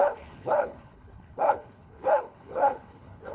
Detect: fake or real fake